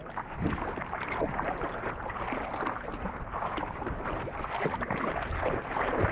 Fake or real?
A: real